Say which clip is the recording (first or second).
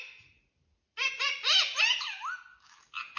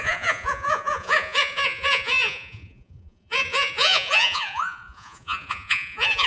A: first